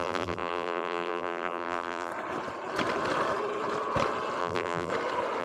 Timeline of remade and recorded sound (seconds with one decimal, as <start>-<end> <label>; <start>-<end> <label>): 0.0-2.1 remade; 2.1-4.4 recorded; 4.4-4.9 remade; 4.9-5.4 recorded